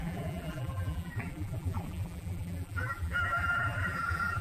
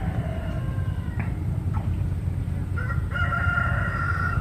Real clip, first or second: second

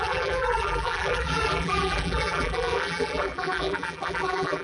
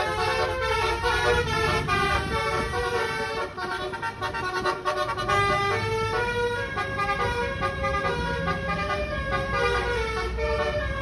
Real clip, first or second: second